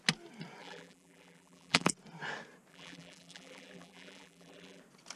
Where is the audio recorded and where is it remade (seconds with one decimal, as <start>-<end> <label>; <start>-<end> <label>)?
0.0-0.6 recorded; 0.6-1.9 remade; 1.9-2.7 recorded; 2.7-4.8 remade; 4.8-5.2 recorded